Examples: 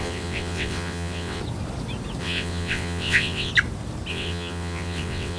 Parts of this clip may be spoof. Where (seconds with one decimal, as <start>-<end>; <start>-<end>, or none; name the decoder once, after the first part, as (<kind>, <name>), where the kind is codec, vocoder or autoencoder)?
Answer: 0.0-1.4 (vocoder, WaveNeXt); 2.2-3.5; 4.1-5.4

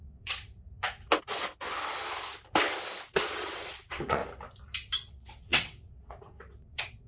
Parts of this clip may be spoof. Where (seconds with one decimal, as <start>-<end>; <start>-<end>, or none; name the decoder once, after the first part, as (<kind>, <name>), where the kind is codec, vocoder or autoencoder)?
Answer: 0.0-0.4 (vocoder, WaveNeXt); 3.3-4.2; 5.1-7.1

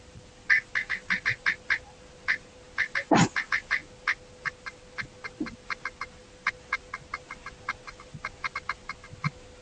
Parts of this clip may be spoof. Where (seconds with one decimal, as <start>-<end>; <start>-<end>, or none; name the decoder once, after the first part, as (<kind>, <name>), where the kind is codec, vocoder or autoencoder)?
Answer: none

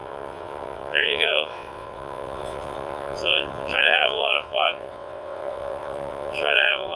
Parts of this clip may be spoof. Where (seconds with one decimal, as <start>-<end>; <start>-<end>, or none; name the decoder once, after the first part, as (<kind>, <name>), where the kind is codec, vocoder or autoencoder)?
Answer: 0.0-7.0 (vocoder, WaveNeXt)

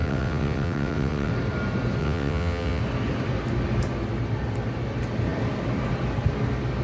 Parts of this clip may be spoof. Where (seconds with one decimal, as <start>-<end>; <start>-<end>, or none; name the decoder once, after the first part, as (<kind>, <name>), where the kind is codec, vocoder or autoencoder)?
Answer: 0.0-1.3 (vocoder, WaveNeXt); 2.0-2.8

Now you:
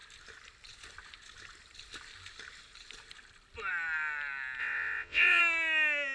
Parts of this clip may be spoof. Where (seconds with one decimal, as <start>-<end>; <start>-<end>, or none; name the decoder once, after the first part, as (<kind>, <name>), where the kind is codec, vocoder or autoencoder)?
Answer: 4.6-5.4 (vocoder, WaveNeXt)

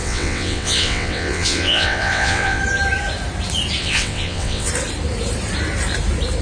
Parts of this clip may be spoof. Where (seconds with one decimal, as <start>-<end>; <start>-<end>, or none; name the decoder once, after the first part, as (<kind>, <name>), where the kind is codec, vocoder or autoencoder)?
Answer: 0.0-2.6 (vocoder, WaveNeXt); 3.8-4.7

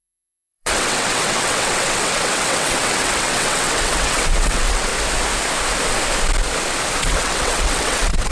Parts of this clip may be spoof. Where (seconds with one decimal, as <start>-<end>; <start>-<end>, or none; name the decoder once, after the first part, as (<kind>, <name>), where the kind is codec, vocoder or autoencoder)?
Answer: 0.0-4.9 (vocoder, WaveNeXt); 7.0-8.3